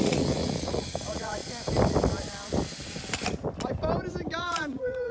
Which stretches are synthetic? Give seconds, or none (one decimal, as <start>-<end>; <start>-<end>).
0.0-1.4; 4.4-5.1